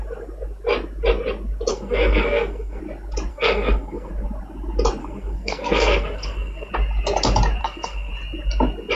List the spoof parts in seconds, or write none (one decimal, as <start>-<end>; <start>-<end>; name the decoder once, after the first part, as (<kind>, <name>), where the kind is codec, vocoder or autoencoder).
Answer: 1.7-2.8 (codec, SNAC); 3.3-4.1; 5.0-6.7; 7.6-8.1